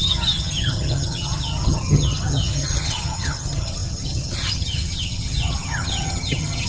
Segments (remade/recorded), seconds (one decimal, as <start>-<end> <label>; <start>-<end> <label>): 0.0-6.7 remade